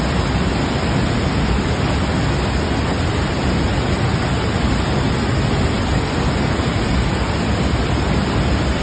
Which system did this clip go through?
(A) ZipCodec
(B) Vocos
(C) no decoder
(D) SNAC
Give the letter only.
C